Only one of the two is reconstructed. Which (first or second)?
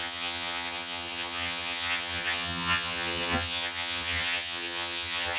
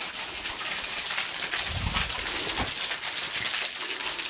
first